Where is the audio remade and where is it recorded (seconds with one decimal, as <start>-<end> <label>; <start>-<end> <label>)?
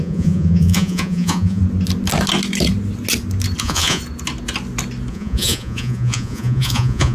0.0-1.6 remade; 1.6-3.6 recorded; 3.6-4.0 remade; 4.0-5.1 recorded; 5.1-7.1 remade